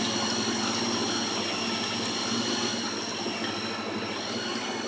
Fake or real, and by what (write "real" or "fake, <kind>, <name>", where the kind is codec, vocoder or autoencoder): real